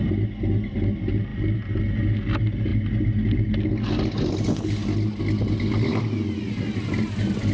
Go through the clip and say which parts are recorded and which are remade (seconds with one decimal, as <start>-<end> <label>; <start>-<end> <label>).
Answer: 0.0-7.5 recorded